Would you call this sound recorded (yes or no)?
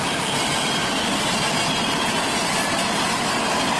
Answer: yes